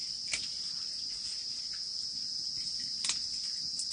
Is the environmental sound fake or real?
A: real